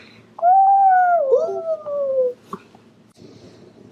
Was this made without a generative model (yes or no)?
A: yes